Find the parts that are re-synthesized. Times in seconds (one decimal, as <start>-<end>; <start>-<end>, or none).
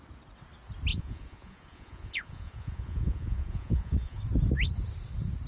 0.9-4.2